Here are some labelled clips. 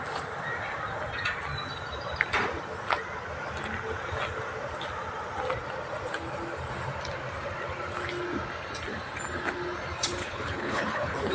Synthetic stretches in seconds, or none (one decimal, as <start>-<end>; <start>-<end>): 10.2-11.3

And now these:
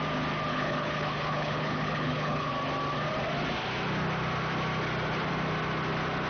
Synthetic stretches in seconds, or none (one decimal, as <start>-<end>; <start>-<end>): 0.5-2.5

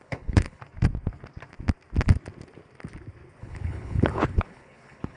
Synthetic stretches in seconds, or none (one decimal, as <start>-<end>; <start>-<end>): 0.0-0.6; 3.4-5.2

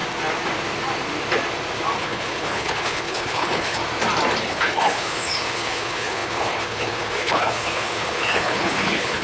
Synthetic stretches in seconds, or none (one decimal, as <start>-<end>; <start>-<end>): 2.0-3.8; 4.4-9.2